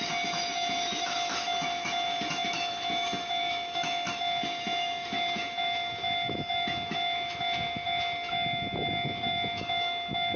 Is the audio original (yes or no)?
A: no